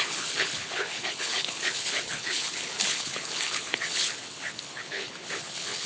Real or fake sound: fake